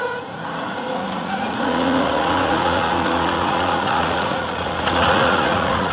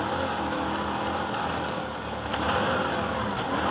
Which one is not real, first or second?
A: first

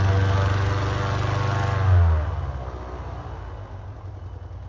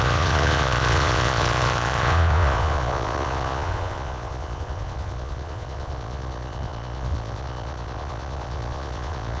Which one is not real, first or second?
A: second